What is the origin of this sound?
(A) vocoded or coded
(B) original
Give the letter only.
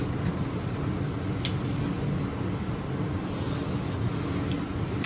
B